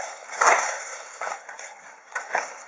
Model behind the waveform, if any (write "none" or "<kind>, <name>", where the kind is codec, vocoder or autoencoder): codec, SNAC